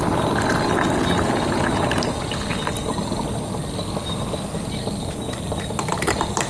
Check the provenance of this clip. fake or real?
real